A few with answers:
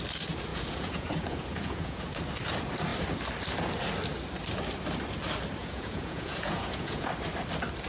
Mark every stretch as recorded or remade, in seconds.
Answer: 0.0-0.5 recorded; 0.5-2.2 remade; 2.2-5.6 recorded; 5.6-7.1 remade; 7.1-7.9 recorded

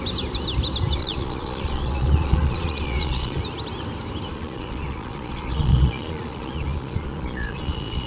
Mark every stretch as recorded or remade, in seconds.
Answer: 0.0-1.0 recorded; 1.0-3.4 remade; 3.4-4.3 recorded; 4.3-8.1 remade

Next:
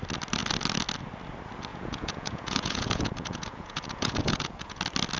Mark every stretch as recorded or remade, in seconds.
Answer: 0.0-1.7 recorded; 1.7-4.8 remade; 4.8-5.2 recorded